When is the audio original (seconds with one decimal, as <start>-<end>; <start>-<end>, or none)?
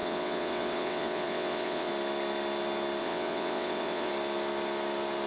1.9-3.0; 4.1-5.3